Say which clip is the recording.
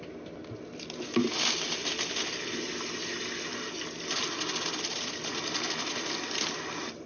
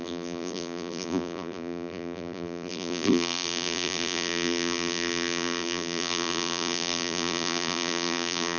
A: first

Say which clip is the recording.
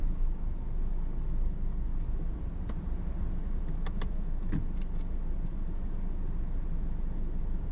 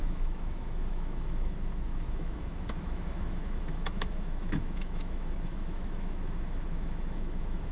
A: first